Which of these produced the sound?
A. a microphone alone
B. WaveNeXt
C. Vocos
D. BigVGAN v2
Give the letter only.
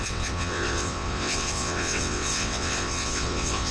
B